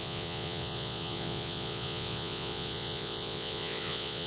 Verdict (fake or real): fake